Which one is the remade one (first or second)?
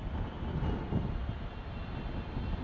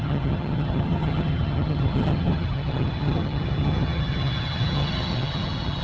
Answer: second